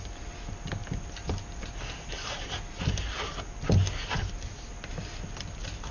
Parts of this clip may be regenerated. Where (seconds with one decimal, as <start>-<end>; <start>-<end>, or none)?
none